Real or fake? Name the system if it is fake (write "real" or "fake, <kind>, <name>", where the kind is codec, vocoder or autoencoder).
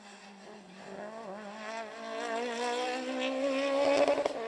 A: real